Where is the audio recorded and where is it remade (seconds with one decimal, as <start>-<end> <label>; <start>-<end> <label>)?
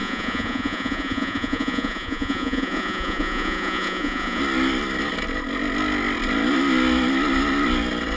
0.0-4.4 remade; 4.4-8.2 recorded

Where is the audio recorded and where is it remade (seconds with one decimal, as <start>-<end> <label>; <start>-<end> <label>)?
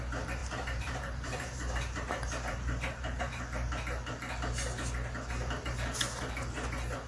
0.0-0.4 recorded; 0.4-3.4 remade; 3.4-7.1 recorded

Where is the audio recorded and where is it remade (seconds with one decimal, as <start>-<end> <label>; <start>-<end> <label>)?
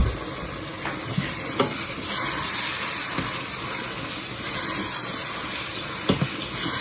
0.0-6.8 recorded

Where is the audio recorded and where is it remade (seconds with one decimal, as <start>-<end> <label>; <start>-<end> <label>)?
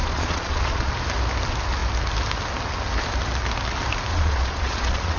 0.0-0.9 remade; 0.9-4.1 recorded; 4.1-5.2 remade